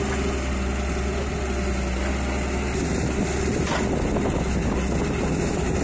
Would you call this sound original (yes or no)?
yes